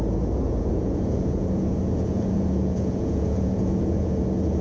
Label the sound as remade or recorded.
remade